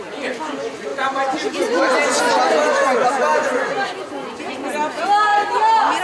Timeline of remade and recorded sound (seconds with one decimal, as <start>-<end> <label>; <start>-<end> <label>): 0.0-6.0 recorded